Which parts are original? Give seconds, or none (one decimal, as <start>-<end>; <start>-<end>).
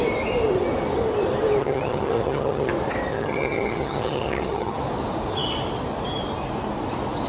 0.0-1.6; 2.7-3.1; 4.8-7.3